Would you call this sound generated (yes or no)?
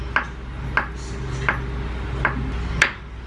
no